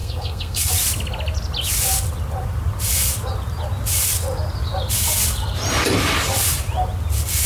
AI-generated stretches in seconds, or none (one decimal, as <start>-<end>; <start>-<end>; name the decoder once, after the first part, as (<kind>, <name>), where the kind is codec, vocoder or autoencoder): 0.0-0.7 (codec, SNAC)